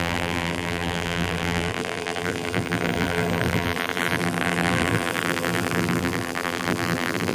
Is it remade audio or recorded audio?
remade